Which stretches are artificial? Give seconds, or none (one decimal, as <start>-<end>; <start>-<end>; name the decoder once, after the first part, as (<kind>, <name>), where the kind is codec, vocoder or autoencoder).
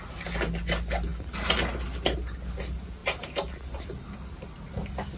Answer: none